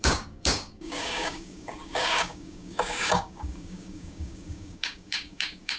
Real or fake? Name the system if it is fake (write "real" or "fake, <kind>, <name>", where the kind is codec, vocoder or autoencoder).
fake, codec, DAC